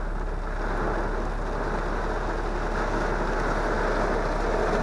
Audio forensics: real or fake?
real